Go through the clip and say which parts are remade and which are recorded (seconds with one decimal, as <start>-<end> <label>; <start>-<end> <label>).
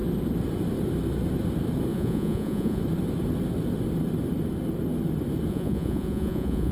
0.0-1.9 recorded; 1.9-2.8 remade; 2.8-5.5 recorded; 5.5-6.7 remade